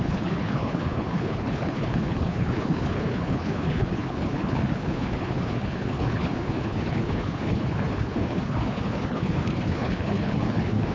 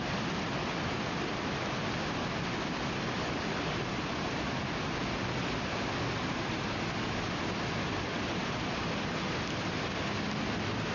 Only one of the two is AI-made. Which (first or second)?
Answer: first